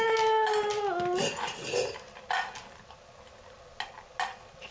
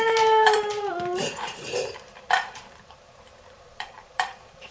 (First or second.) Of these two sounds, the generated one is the second